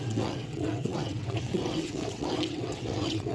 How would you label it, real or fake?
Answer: fake